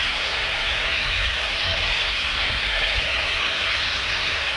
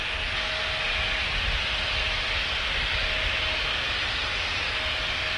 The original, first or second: second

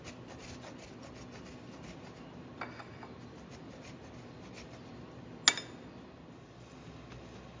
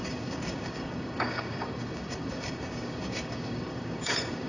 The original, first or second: first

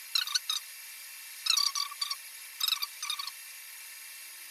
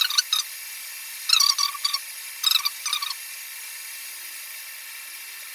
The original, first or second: first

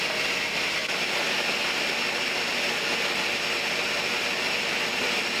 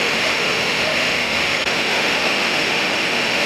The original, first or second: first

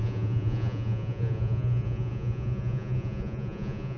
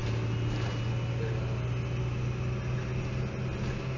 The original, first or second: second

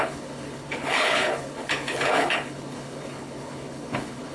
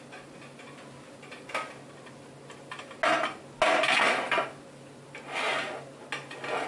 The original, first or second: second